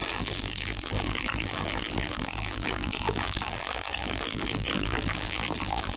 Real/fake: fake